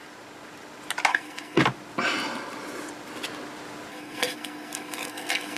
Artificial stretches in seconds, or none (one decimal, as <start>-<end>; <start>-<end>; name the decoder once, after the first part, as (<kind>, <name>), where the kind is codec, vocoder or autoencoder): 1.1-1.6 (codec, SNAC); 3.9-5.6